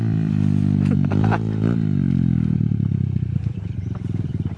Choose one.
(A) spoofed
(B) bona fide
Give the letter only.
A